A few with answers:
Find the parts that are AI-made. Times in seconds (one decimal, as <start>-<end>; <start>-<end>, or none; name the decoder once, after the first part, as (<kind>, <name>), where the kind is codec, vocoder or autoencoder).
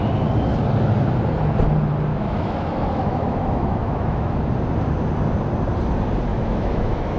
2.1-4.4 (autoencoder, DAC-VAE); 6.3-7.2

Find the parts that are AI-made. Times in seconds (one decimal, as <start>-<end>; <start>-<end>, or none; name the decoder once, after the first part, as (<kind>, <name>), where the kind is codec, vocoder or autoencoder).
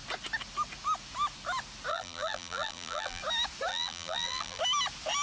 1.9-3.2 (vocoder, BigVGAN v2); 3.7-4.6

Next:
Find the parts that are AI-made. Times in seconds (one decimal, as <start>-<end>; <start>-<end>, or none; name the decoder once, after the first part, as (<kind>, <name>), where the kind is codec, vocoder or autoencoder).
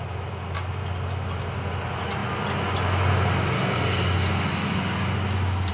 none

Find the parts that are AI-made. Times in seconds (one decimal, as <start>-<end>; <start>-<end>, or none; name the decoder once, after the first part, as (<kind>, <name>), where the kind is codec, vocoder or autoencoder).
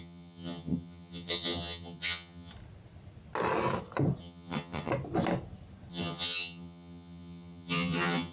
0.0-2.5 (vocoder, HiFi-GAN); 4.2-4.9; 5.9-8.3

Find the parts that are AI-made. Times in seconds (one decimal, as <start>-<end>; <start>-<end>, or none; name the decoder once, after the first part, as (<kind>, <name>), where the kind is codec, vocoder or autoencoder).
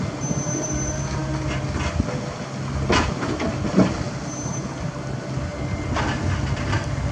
none